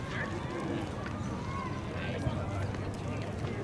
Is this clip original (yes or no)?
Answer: yes